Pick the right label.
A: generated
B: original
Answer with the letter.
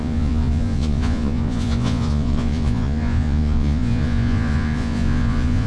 A